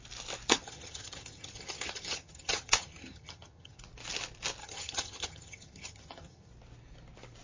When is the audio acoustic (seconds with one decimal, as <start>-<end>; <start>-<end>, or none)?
0.0-0.6; 3.8-4.6; 6.5-7.4